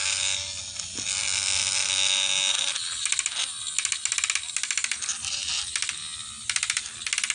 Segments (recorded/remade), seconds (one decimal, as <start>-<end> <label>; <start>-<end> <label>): 0.0-7.3 recorded